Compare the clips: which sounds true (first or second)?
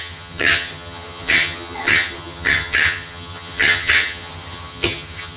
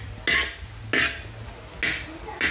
second